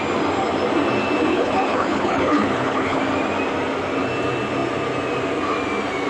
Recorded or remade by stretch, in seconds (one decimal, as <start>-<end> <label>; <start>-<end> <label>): 0.0-1.3 recorded; 1.3-3.0 remade; 3.0-6.1 recorded